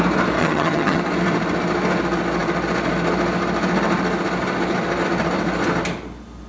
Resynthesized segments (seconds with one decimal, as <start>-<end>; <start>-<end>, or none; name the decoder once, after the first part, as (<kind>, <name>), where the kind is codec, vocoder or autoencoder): 0.4-1.0 (vocoder, HiFi-GAN)